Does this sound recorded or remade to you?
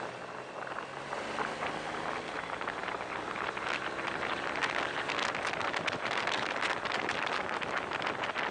recorded